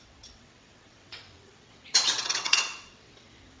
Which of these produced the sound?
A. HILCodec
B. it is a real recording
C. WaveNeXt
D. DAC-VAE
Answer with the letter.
C